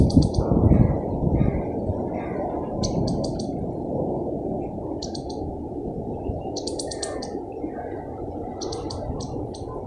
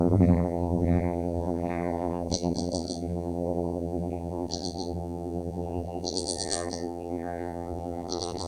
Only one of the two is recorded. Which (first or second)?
first